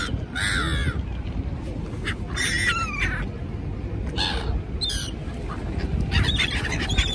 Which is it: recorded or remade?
recorded